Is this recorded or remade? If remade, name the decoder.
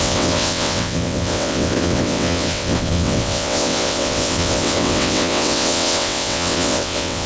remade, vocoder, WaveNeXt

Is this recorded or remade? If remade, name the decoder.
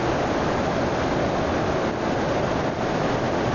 recorded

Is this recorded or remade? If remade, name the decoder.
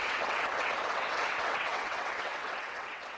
remade, vocoder, WaveNeXt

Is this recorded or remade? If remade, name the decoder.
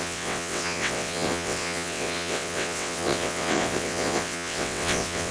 remade, vocoder, WaveNeXt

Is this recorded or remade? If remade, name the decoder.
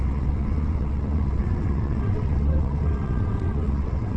remade, vocoder, WaveNeXt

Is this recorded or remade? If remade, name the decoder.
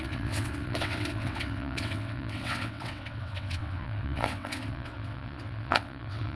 remade, vocoder, WaveNeXt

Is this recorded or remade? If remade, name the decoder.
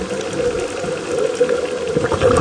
recorded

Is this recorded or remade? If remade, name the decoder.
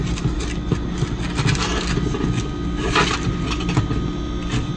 recorded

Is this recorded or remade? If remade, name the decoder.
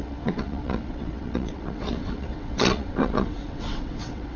remade, vocoder, WaveNeXt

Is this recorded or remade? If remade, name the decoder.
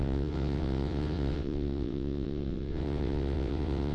remade, vocoder, WaveNeXt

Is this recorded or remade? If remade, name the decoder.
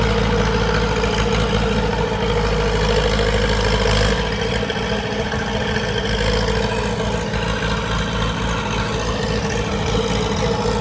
recorded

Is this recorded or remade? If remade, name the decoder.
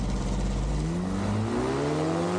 recorded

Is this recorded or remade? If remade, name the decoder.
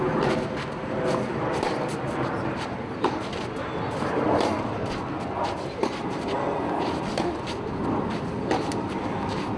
recorded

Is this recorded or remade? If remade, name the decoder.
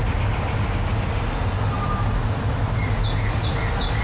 recorded